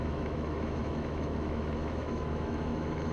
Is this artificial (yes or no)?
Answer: yes